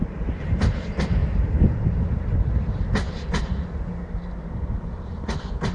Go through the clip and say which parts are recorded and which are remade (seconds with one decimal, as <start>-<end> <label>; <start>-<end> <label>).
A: 0.0-5.7 recorded